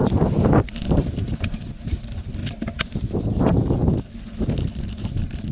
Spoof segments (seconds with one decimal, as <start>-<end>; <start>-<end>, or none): 0.0-2.4; 3.3-3.8; 4.6-5.5